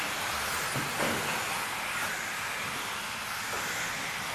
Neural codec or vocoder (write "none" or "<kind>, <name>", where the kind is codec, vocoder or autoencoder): none